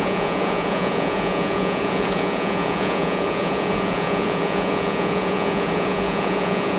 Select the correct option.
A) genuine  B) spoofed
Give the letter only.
B